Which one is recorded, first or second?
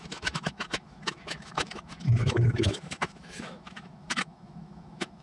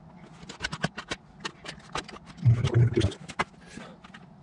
second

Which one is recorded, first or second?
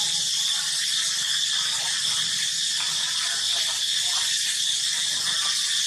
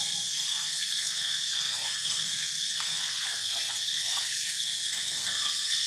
first